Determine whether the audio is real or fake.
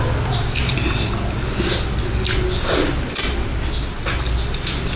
real